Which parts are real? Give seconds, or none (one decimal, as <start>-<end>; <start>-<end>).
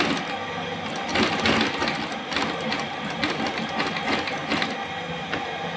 0.0-5.8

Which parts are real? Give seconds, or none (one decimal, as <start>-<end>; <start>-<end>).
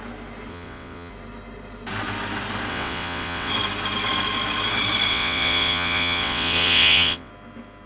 0.0-0.5; 1.1-2.7; 3.5-5.1; 7.3-7.9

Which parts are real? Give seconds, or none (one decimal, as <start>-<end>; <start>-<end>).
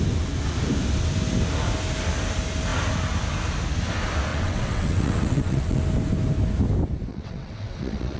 0.0-4.3; 5.8-7.1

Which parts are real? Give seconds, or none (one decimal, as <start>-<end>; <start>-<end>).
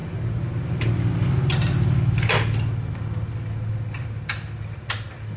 0.0-5.4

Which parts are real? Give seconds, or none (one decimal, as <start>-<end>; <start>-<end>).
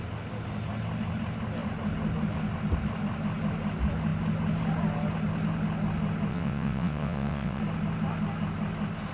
0.0-6.3; 7.6-9.1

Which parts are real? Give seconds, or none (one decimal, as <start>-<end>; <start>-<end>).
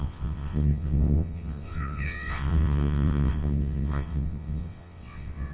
none